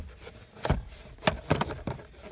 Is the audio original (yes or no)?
yes